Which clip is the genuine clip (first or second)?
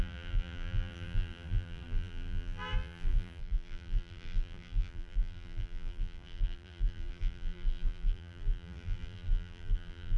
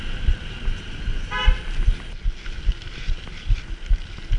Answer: second